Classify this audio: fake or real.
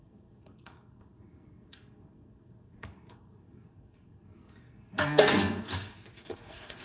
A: fake